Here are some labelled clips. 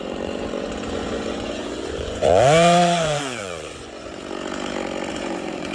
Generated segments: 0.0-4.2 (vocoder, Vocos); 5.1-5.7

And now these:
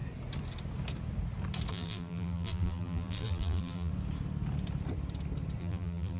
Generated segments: 1.7-3.9 (vocoder, BigVGAN v2); 5.6-6.2